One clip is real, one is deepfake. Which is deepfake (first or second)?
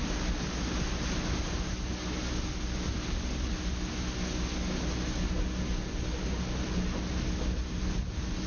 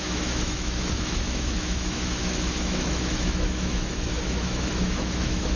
second